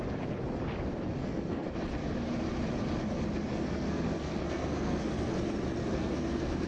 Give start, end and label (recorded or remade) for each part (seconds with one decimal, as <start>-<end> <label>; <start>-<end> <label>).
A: 0.0-1.2 recorded; 1.2-1.7 remade; 1.7-3.5 recorded; 3.5-5.3 remade; 5.3-5.8 recorded; 5.8-6.7 remade